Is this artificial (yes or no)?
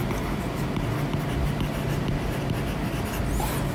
no